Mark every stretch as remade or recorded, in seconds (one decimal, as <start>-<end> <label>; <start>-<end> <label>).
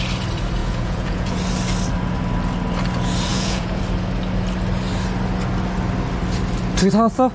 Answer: 0.0-0.6 recorded; 0.6-1.3 remade; 1.3-3.3 recorded; 3.3-3.8 remade; 3.8-7.3 recorded